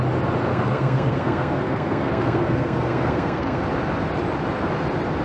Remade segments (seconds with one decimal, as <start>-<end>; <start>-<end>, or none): 0.5-3.6